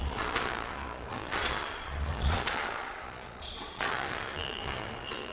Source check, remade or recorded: remade